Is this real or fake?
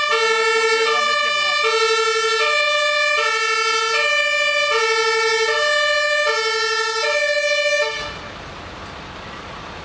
real